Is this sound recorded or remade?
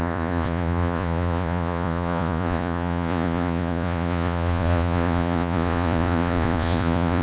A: remade